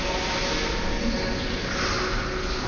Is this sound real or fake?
real